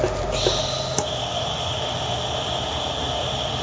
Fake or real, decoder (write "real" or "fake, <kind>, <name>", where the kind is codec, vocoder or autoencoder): real